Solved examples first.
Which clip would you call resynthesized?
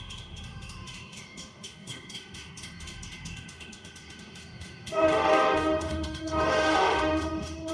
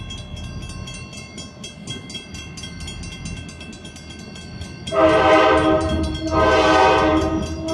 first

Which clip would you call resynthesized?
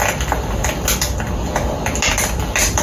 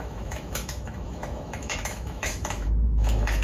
second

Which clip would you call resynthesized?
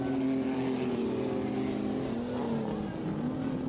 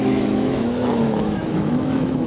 second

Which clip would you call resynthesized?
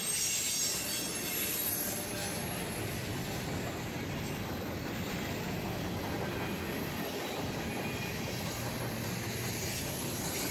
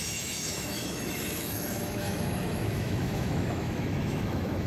second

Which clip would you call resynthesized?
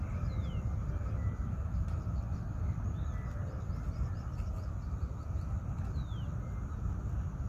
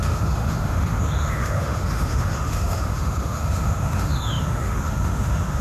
second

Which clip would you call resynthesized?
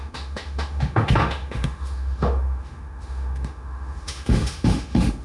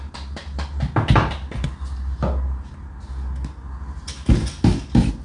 first